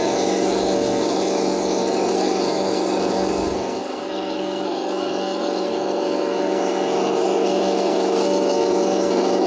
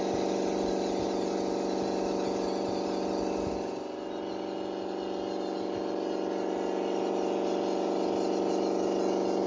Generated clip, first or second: first